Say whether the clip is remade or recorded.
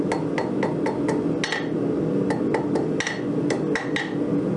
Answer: recorded